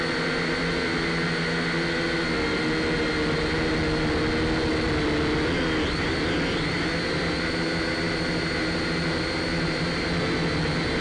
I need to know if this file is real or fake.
real